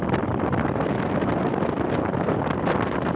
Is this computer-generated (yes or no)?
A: no